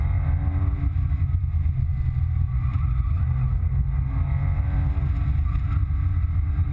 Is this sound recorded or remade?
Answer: recorded